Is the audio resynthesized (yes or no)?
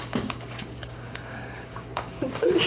yes